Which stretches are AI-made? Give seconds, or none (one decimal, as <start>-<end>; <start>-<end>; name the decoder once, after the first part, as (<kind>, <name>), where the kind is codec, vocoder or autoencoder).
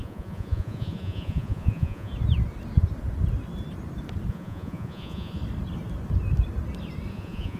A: 0.0-2.1 (vocoder, Vocos); 4.3-5.4; 7.1-7.6